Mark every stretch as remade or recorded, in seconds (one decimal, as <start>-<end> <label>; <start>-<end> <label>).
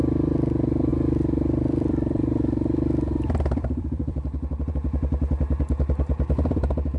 0.0-0.9 recorded; 0.9-4.7 remade; 4.7-7.0 recorded